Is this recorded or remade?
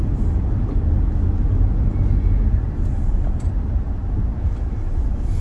recorded